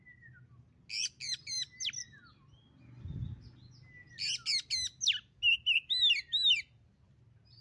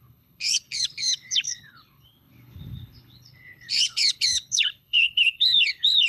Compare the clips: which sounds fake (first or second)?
second